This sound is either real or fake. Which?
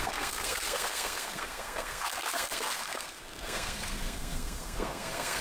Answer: fake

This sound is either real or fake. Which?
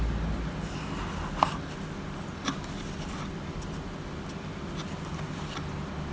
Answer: real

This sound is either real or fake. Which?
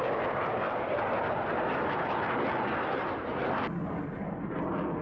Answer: real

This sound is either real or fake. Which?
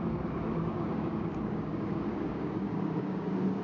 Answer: fake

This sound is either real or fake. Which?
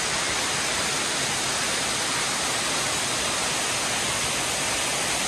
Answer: real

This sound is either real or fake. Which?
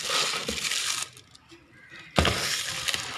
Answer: real